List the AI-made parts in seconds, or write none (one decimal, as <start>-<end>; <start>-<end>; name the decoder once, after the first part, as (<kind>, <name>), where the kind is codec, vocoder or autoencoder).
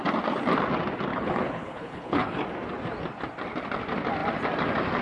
1.1-2.4 (codec, HILCodec)